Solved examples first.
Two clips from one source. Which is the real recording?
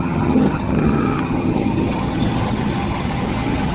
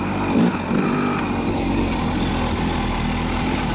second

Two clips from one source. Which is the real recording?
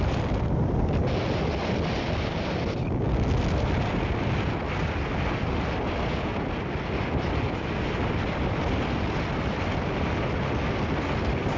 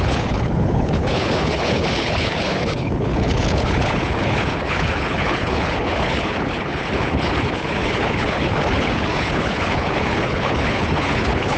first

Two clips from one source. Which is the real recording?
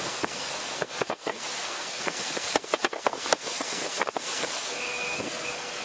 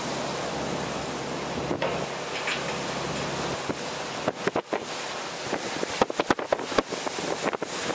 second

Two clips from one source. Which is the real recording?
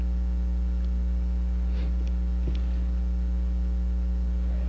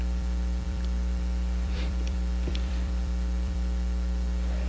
first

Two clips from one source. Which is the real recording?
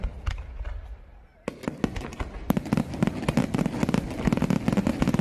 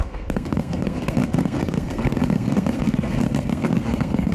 first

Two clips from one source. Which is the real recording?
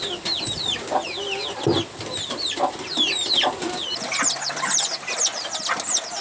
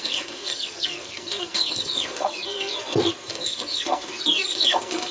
first